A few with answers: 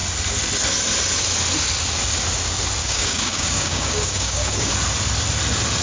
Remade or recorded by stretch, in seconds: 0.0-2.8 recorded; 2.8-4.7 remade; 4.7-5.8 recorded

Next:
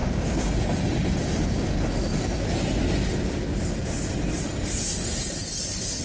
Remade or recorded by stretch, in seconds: 0.0-0.5 remade; 0.5-6.0 recorded